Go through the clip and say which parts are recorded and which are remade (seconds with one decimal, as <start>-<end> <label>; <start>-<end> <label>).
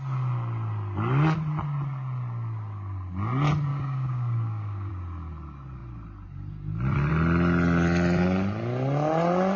0.0-3.7 recorded; 3.7-4.9 remade; 4.9-9.6 recorded